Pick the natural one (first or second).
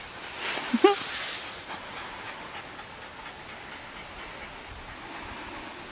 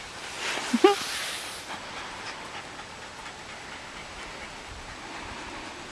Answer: first